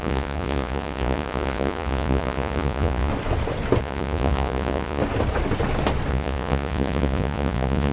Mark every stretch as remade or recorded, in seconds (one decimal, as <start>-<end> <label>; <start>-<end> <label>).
0.0-3.1 remade; 3.1-3.8 recorded; 3.8-5.0 remade; 5.0-6.1 recorded; 6.1-7.9 remade